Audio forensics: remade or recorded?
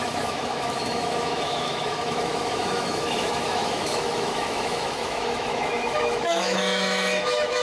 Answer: remade